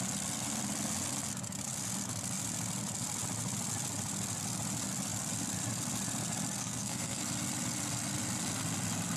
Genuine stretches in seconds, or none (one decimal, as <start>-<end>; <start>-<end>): 0.0-6.6; 7.2-9.2